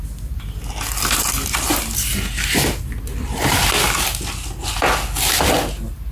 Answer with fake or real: real